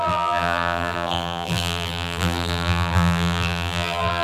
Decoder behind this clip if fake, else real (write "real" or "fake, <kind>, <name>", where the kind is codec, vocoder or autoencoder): fake, vocoder, BigVGAN v2